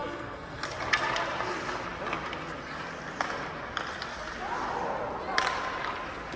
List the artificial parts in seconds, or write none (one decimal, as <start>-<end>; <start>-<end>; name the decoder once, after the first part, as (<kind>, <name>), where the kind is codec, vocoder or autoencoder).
0.0-0.6 (codec, SNAC)